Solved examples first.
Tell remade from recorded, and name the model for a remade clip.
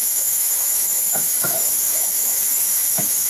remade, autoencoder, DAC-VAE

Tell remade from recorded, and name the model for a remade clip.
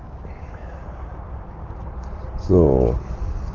recorded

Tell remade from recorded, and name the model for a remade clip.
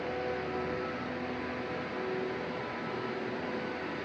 recorded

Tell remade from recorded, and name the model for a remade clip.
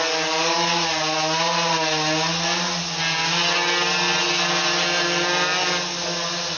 recorded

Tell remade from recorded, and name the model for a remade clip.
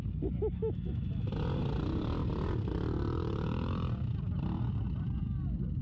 recorded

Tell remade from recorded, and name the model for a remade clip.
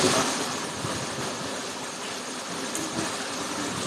recorded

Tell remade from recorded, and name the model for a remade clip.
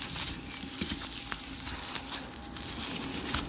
recorded